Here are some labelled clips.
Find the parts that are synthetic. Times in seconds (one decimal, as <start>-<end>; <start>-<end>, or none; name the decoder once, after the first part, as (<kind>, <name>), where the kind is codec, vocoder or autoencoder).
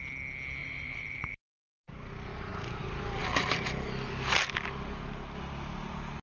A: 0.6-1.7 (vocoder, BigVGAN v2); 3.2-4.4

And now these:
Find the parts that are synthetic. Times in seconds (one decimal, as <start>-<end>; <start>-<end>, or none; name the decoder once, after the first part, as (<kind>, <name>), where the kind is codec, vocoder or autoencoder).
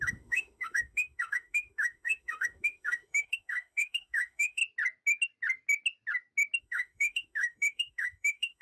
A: 0.0-4.6 (autoencoder, DAC-VAE); 6.6-8.6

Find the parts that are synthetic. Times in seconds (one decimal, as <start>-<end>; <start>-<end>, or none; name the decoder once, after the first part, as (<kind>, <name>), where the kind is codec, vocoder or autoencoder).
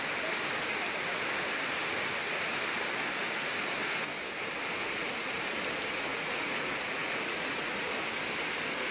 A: 4.8-5.4 (vocoder, Vocos); 6.1-7.9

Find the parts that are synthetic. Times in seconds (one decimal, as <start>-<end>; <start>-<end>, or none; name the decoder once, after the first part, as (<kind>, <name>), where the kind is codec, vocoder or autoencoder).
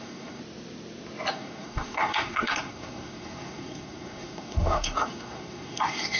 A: 0.0-0.4 (codec, SNAC); 1.3-6.2